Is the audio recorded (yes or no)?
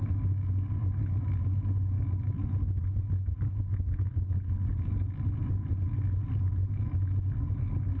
yes